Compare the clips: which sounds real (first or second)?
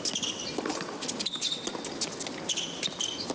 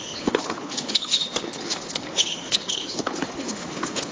first